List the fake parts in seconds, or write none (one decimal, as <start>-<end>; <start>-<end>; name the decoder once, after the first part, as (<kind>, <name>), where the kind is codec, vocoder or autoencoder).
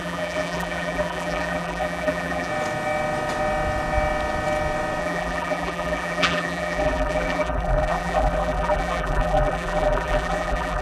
0.0-2.5 (vocoder, BigVGAN v2); 5.0-10.8